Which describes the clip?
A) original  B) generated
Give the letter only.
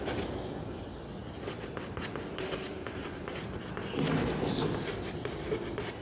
A